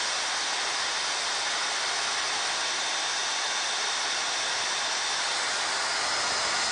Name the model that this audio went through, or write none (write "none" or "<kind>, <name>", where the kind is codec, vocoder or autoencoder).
none